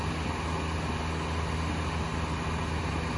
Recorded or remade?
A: recorded